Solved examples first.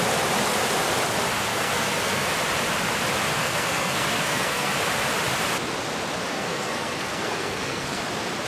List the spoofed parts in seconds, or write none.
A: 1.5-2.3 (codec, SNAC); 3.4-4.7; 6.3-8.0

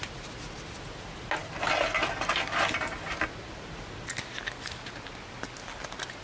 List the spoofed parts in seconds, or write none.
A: none

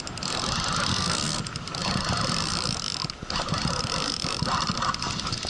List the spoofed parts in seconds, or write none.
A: 0.9-1.4 (codec, SNAC)

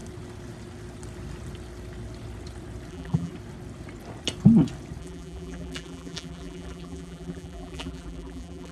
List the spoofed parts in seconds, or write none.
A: 2.9-3.3 (vocoder, BigVGAN v2); 5.0-8.7